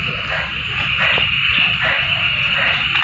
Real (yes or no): yes